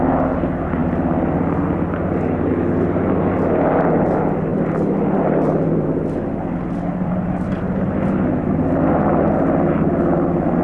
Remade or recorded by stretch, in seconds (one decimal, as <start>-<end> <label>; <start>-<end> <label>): 0.0-4.5 recorded; 4.5-6.0 remade; 6.0-6.9 recorded; 6.9-7.9 remade; 7.9-10.6 recorded